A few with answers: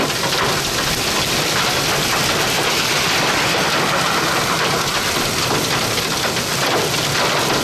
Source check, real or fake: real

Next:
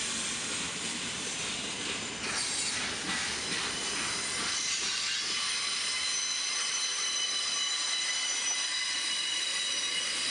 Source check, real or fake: real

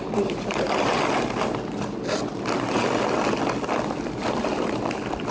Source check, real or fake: real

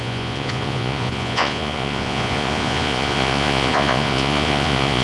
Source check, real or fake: fake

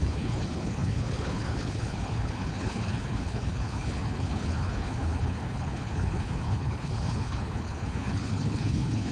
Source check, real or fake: fake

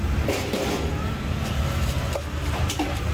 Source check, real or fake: real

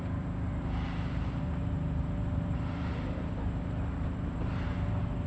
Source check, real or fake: fake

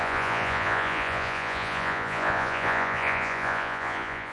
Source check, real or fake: fake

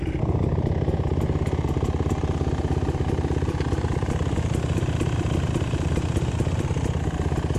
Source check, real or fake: real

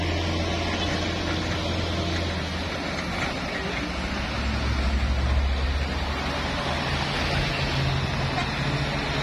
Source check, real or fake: real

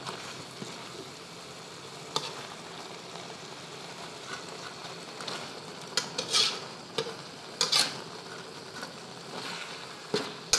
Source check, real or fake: real